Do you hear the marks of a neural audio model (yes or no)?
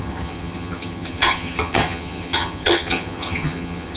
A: yes